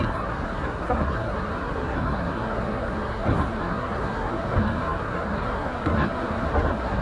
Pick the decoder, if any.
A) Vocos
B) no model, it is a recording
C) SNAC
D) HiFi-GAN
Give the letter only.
C